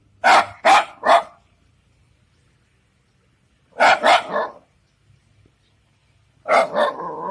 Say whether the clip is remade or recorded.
recorded